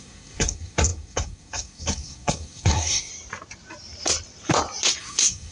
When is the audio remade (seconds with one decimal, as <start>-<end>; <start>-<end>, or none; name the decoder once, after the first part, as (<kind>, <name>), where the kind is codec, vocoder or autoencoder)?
0.0-3.1 (codec, SNAC); 5.0-5.5